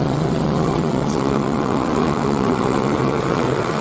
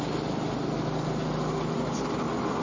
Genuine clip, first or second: second